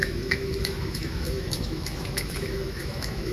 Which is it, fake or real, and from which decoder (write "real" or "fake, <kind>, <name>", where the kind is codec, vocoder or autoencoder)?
fake, autoencoder, DAC-VAE